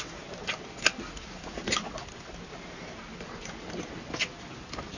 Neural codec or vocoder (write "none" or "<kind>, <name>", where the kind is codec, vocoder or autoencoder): none